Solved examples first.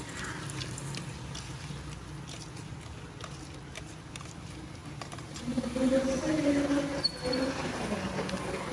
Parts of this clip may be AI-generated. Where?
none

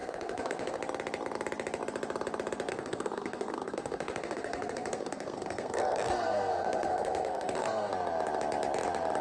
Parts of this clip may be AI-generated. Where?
0.0-0.8 (codec, SNAC); 2.7-7.9